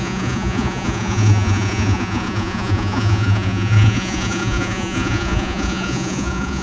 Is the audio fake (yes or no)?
yes